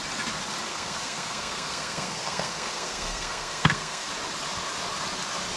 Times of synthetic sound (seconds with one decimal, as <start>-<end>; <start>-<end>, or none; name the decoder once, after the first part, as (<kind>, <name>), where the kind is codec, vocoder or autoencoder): 0.7-4.1 (codec, SNAC)